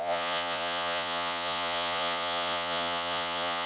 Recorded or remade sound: remade